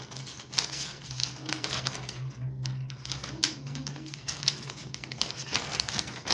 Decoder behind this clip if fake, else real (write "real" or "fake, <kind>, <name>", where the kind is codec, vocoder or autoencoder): fake, codec, SNAC